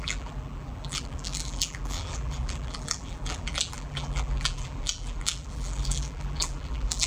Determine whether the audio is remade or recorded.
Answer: remade